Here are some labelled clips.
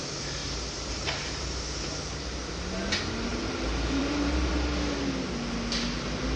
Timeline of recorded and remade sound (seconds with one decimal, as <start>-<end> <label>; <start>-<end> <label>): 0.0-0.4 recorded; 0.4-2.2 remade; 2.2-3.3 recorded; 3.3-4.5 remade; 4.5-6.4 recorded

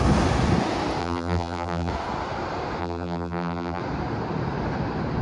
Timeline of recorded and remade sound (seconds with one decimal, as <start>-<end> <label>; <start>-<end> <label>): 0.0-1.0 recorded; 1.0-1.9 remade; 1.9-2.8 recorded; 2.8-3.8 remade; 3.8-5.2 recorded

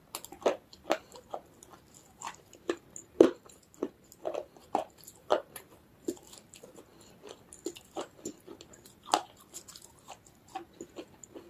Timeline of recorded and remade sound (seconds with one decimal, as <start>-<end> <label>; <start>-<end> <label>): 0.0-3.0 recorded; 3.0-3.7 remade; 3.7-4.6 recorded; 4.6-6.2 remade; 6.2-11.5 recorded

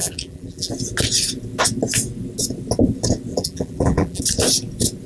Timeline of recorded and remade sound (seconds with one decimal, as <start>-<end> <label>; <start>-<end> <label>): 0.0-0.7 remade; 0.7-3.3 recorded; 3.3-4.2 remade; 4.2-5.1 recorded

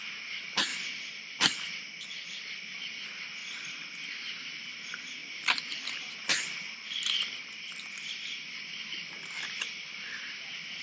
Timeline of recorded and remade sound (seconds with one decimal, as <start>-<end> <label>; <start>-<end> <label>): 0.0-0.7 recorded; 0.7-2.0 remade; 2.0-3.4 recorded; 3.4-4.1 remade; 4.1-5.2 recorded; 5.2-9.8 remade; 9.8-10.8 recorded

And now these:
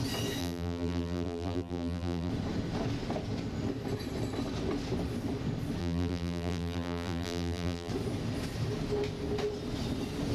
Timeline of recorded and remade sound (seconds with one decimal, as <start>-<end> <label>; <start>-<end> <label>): 0.0-0.4 recorded; 0.4-2.3 remade; 2.3-5.8 recorded; 5.8-7.9 remade; 7.9-10.3 recorded